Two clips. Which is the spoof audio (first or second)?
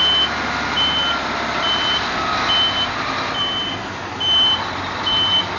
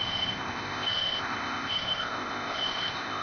second